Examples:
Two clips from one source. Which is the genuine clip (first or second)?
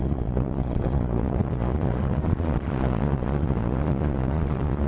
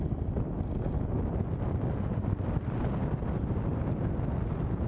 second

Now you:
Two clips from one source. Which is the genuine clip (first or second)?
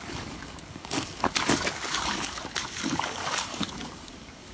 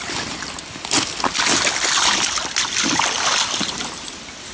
second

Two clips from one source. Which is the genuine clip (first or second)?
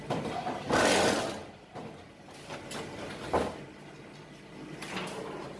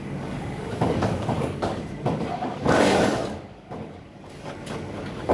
first